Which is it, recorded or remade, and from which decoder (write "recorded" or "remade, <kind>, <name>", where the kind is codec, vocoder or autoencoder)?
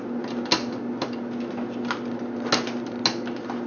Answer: recorded